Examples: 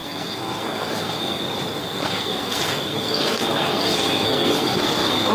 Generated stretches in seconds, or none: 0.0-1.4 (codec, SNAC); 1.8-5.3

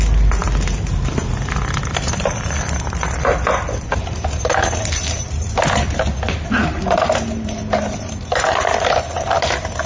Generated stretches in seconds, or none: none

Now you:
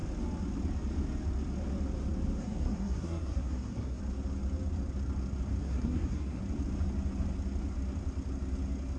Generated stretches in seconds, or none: 2.4-4.0 (codec, SNAC); 5.6-6.4

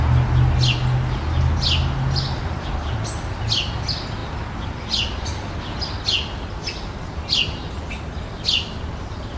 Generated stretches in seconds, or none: none

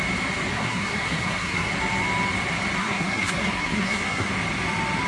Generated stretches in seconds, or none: 0.5-1.7 (codec, SNAC); 2.8-4.3

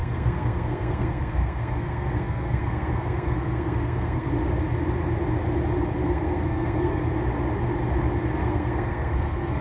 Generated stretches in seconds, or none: 0.0-4.3 (codec, SNAC); 6.0-7.0; 8.4-9.6

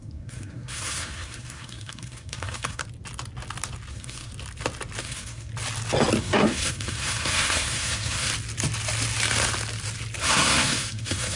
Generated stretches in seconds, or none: 0.0-2.8 (codec, SNAC); 3.9-4.3; 5.0-5.5; 6.2-8.3; 10.2-11.4

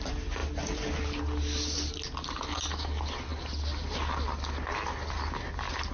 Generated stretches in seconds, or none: none